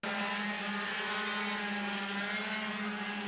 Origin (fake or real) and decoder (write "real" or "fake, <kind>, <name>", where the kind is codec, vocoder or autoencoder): real